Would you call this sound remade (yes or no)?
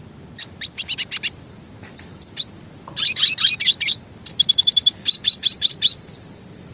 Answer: no